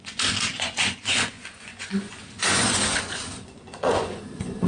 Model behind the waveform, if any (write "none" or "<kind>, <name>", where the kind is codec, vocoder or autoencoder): vocoder, Vocos